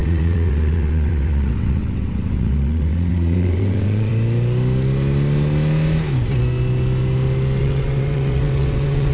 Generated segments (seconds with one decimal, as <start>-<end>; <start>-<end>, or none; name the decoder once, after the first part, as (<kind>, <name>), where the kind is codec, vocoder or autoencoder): 0.0-4.1 (vocoder, WaveNeXt); 7.6-9.1